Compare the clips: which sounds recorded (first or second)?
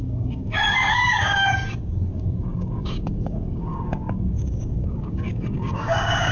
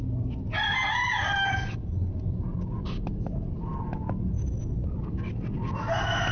second